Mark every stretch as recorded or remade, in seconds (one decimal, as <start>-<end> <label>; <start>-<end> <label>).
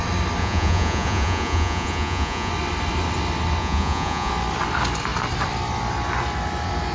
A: 0.0-0.4 recorded; 0.4-2.5 remade; 2.5-3.6 recorded; 3.6-4.3 remade; 4.3-6.9 recorded